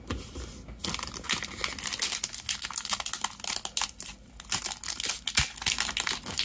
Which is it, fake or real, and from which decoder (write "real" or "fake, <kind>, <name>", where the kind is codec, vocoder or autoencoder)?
real